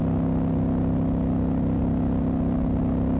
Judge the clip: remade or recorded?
recorded